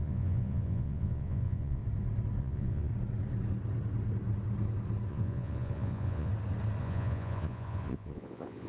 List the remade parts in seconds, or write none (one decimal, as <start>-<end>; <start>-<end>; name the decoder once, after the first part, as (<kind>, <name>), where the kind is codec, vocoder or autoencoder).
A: 0.0-1.8 (vocoder, Vocos); 2.4-2.9; 5.1-6.3; 6.8-8.7